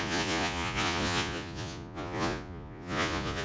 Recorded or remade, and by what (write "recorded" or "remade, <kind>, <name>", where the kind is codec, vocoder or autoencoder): remade, vocoder, Vocos